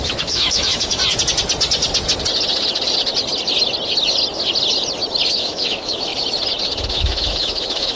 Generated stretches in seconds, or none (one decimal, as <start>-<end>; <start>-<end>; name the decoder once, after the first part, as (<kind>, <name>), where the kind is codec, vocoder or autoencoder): 0.0-1.0 (autoencoder, DAC-VAE); 5.3-6.1; 6.9-8.0